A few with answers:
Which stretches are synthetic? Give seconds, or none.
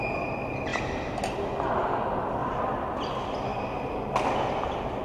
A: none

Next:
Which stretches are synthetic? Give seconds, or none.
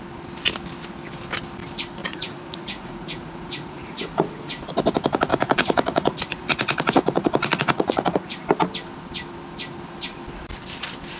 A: 2.0-4.5 (vocoder, Vocos); 5.3-8.3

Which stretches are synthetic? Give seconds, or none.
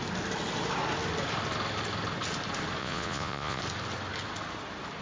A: 2.8-3.6 (vocoder, Vocos)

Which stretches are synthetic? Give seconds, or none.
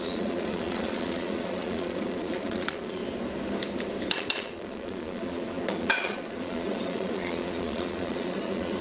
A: 0.0-3.0 (vocoder, Vocos); 4.1-8.8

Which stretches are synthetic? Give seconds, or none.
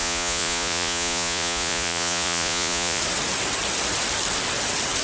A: 0.0-3.0 (vocoder, Vocos)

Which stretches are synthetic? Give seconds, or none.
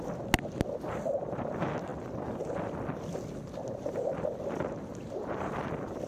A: none